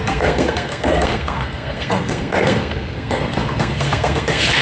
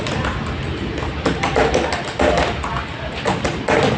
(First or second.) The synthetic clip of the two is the first